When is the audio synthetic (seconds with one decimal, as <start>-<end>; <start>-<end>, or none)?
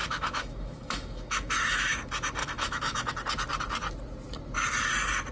0.0-2.0; 2.4-3.1